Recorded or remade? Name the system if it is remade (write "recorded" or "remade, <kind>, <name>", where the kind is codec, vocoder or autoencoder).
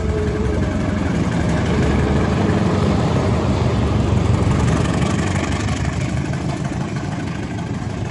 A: remade, vocoder, BigVGAN v2